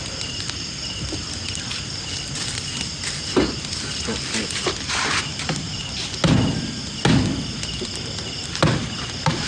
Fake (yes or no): no